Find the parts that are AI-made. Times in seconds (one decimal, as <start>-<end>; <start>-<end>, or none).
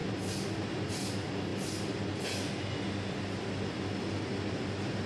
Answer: none